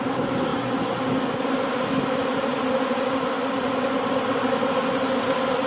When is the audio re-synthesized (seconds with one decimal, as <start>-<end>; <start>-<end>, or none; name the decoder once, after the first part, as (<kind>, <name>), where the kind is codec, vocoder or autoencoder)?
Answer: none